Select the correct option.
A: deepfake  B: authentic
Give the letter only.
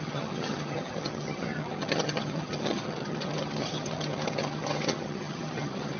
A